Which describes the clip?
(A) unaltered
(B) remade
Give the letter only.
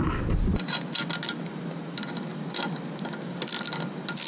A